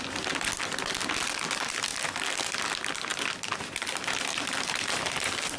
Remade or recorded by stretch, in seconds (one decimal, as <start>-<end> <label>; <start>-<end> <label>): 0.0-3.1 recorded; 3.1-5.6 remade